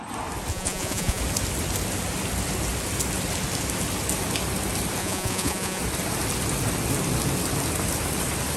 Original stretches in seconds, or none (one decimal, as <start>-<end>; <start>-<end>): 0.0-0.5; 1.2-5.0; 5.8-8.6

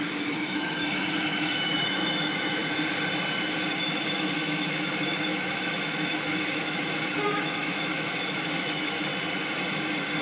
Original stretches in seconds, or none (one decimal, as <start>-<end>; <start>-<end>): 2.6-3.8; 9.1-10.2